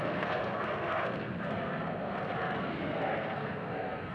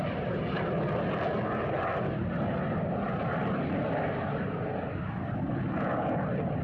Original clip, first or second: second